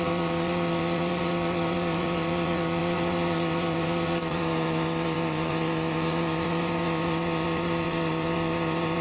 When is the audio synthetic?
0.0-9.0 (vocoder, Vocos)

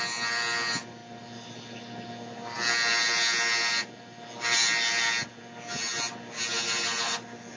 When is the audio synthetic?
none

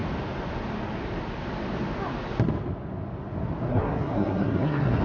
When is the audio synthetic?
3.7-5.0 (codec, SNAC)

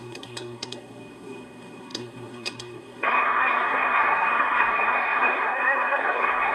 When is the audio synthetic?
0.0-6.5 (codec, SNAC)

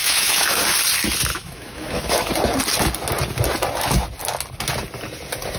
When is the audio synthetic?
0.0-0.6 (autoencoder, DAC-VAE); 1.3-2.3

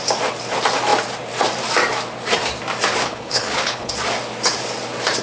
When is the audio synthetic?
3.0-3.9 (codec, HILCodec)

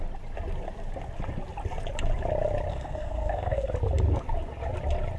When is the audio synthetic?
2.7-3.7 (codec, SNAC)

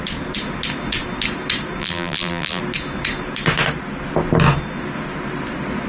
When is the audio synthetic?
1.8-2.6 (vocoder, BigVGAN v2)